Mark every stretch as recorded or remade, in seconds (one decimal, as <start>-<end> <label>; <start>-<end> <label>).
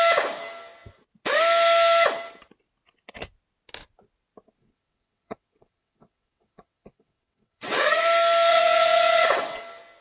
0.0-4.6 recorded; 4.6-8.0 remade; 8.0-8.5 recorded; 8.5-9.6 remade; 9.6-10.0 recorded